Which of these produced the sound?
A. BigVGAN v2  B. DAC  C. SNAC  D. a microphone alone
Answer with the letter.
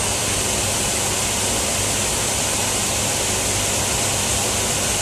D